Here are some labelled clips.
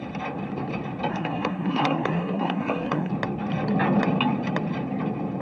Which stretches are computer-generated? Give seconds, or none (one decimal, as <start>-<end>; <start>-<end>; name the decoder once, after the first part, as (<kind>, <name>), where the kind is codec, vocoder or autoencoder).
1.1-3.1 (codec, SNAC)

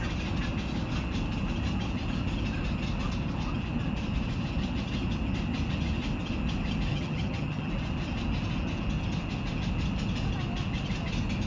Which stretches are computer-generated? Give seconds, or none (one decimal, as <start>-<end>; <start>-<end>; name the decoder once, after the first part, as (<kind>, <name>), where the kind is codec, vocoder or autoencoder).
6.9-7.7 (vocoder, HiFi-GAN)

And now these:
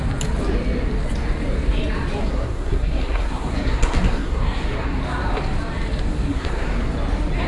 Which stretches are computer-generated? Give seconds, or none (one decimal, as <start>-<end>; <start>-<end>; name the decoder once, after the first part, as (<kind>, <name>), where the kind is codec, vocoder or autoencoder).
2.2-5.0 (codec, SNAC); 6.3-6.9

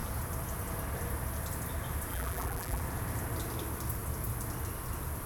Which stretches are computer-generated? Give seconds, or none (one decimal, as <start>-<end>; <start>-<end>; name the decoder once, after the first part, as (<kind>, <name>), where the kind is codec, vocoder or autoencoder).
2.1-2.8 (vocoder, BigVGAN v2)

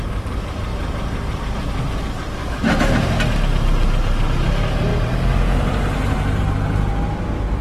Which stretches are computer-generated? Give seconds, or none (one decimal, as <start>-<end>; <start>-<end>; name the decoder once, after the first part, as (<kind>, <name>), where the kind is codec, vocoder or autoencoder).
2.4-3.0 (autoencoder, DAC-VAE)

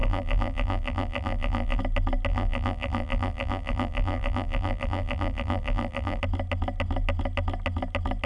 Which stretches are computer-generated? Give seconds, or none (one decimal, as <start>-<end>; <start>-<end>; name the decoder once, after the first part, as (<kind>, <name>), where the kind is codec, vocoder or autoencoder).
0.0-1.8 (vocoder, BigVGAN v2); 2.3-6.2

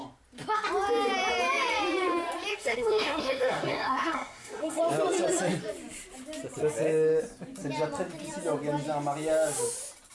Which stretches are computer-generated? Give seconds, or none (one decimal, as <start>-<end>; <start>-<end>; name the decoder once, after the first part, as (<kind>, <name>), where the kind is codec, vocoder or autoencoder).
2.5-4.8 (codec, SNAC)

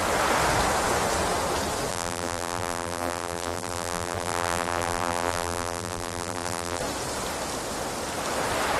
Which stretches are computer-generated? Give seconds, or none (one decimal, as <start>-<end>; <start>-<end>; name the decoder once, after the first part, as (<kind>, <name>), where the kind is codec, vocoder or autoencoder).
1.9-6.8 (vocoder, BigVGAN v2)